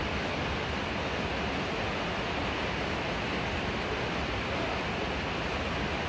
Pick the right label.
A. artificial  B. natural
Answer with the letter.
B